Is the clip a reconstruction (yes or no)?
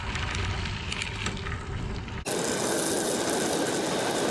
no